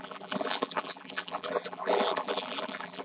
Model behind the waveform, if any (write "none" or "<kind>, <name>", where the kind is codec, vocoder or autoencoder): vocoder, BigVGAN v2